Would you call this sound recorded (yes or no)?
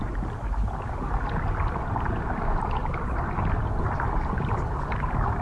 yes